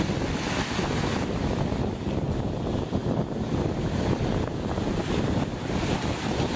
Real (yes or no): yes